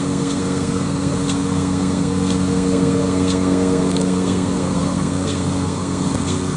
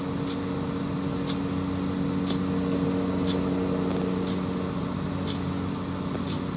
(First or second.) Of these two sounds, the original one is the second